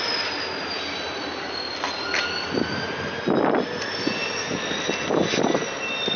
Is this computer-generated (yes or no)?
no